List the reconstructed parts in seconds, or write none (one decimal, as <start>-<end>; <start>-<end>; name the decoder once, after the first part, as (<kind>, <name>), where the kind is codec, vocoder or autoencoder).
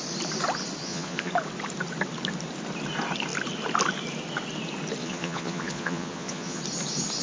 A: 0.8-1.3 (vocoder, Vocos); 5.0-6.6